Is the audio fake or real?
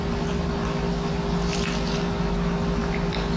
real